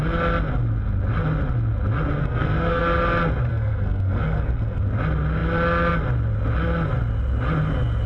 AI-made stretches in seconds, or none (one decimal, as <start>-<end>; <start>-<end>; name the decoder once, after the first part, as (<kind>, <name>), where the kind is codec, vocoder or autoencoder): 2.2-2.8 (codec, SNAC); 3.5-4.8